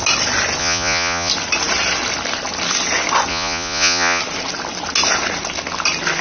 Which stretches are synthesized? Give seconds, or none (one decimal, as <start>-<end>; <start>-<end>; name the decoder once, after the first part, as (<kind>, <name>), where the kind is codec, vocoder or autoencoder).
0.6-1.3 (vocoder, Vocos); 3.3-4.2